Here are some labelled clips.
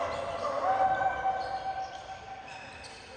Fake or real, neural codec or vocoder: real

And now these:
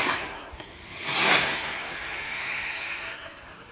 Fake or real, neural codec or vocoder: fake, codec, SNAC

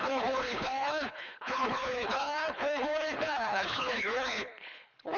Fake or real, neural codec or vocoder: fake, codec, HILCodec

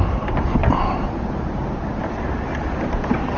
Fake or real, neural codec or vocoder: fake, vocoder, BigVGAN v2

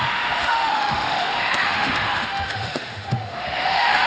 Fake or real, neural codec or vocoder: fake, autoencoder, DAC-VAE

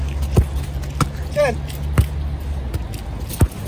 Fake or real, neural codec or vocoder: real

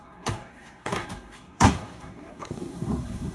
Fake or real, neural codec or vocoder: fake, codec, SNAC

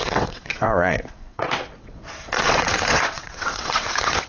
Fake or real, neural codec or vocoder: fake, vocoder, WaveNeXt